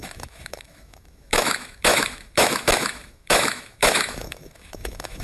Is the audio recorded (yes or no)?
no